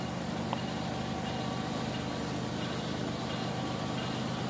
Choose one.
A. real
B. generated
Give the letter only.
A